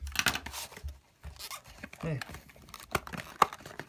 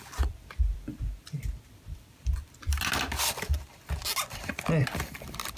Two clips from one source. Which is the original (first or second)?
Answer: first